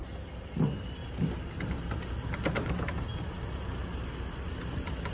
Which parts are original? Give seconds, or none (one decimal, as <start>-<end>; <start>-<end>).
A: 0.0-5.1